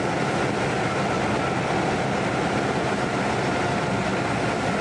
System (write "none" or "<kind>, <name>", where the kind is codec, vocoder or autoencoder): none